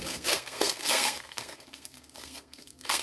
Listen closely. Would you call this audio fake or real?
fake